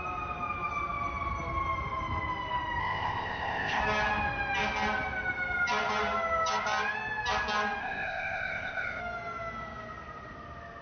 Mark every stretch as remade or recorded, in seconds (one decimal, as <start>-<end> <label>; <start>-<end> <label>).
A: 0.0-2.8 recorded; 2.8-3.8 remade; 3.8-7.8 recorded; 7.8-9.0 remade; 9.0-10.8 recorded